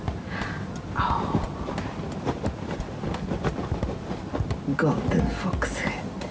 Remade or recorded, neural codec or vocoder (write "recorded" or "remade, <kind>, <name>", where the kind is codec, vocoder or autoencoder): recorded